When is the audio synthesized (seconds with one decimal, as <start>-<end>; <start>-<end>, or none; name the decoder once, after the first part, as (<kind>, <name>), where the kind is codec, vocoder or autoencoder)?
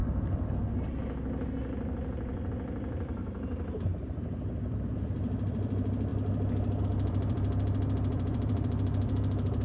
2.5-3.2 (vocoder, BigVGAN v2); 4.1-6.1; 6.8-9.6